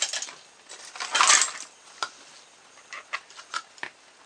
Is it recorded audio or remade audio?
recorded